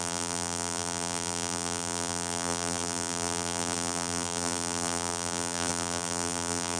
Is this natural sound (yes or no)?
no